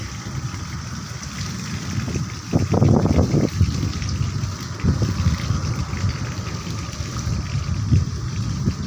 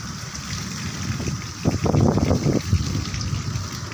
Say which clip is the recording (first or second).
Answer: first